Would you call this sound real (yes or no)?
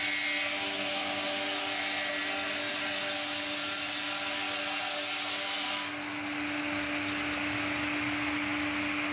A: yes